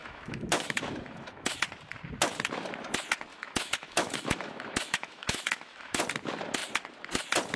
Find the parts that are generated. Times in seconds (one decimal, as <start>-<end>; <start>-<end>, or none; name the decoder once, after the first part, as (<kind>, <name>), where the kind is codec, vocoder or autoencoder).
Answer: 0.0-1.6 (autoencoder, DAC-VAE); 3.3-6.0